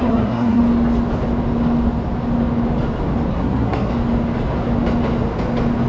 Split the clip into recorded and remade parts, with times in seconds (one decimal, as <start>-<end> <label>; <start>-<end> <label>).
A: 0.0-0.6 remade; 0.6-3.3 recorded; 3.3-3.9 remade; 3.9-5.9 recorded